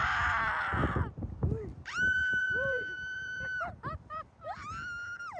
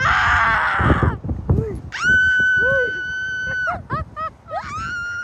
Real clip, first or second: second